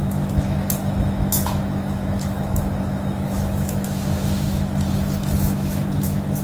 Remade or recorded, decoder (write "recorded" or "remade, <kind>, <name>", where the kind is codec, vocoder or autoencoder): remade, autoencoder, DAC-VAE